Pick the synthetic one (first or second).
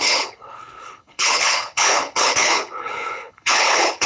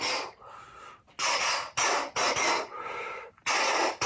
first